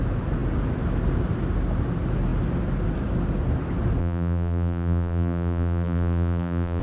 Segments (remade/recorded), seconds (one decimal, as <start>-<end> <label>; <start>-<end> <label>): 0.0-4.0 recorded; 4.0-6.8 remade